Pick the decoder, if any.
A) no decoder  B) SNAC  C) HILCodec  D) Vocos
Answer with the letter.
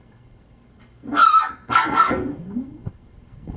B